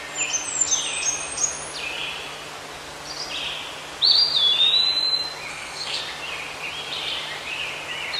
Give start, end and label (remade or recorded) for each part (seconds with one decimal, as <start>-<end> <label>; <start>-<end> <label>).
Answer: 0.0-5.5 recorded; 5.5-6.0 remade; 6.0-8.2 recorded